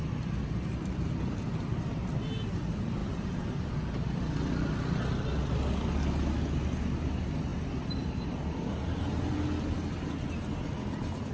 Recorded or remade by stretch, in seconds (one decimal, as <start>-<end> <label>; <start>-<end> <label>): 0.0-11.3 recorded